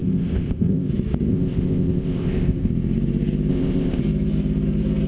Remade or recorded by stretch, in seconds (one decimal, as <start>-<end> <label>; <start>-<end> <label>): 0.0-0.9 remade; 0.9-1.3 recorded; 1.3-2.7 remade; 2.7-3.5 recorded; 3.5-4.0 remade; 4.0-5.1 recorded